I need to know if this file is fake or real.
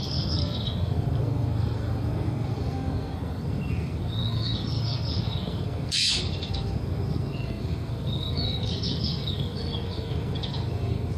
fake